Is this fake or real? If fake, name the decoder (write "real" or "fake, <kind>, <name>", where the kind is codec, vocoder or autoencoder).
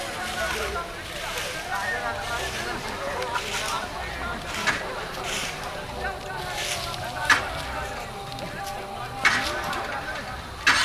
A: real